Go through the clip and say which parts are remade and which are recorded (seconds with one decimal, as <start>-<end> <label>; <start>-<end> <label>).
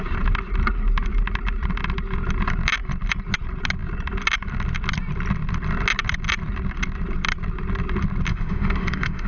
0.0-8.3 recorded; 8.3-9.3 remade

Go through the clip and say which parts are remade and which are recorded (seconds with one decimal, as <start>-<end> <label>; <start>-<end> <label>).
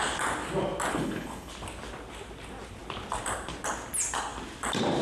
0.0-0.9 recorded; 0.9-1.5 remade; 1.5-5.0 recorded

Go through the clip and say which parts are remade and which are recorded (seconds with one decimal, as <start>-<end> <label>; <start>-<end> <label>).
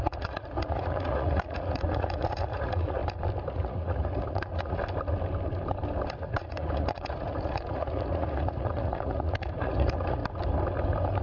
0.0-3.0 remade; 3.0-3.5 recorded; 3.5-4.8 remade; 4.8-6.2 recorded; 6.2-10.2 remade; 10.2-11.2 recorded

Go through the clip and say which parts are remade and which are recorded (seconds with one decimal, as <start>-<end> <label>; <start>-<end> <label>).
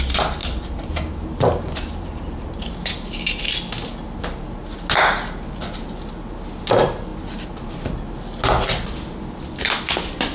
0.0-0.4 recorded; 0.4-2.5 remade; 2.5-10.3 recorded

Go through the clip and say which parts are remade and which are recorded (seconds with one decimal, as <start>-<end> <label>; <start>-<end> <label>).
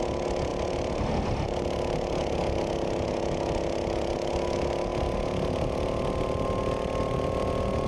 0.0-7.9 recorded